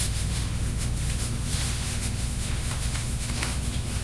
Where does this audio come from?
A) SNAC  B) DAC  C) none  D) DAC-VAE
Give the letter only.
D